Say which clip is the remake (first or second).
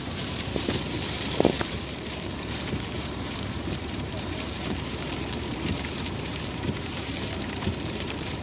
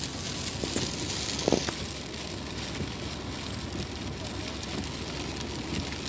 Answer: first